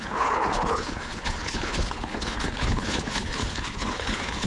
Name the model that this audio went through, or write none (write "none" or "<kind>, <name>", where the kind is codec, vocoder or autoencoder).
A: codec, HILCodec